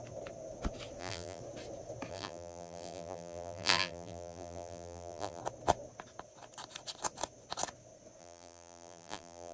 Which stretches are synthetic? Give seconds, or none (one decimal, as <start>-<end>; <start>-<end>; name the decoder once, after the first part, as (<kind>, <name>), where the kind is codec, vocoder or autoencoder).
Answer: 1.0-1.4 (vocoder, BigVGAN v2); 2.1-5.4; 8.2-9.5